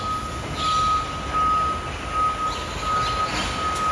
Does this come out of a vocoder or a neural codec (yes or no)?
no